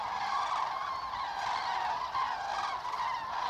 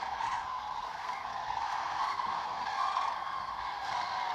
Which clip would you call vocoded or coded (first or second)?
second